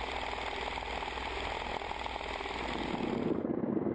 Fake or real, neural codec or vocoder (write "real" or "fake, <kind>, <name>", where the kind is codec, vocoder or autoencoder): real